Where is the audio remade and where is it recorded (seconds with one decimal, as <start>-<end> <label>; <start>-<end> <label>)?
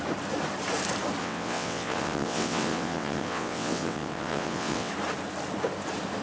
0.0-1.2 recorded; 1.2-4.9 remade; 4.9-6.2 recorded